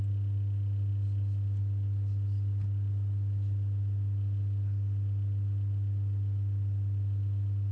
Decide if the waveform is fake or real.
real